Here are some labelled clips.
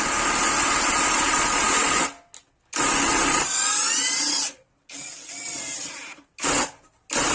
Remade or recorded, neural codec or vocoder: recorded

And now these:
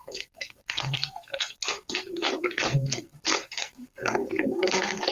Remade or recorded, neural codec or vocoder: remade, codec, SNAC